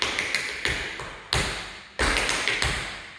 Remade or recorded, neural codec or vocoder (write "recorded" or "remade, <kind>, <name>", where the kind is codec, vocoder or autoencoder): recorded